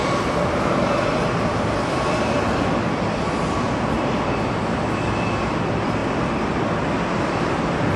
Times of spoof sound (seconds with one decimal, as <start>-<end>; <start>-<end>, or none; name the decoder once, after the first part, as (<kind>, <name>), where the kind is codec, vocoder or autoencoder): none